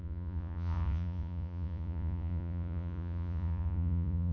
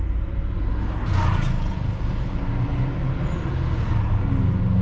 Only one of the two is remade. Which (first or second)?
first